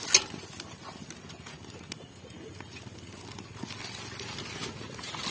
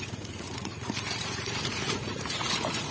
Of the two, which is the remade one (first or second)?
second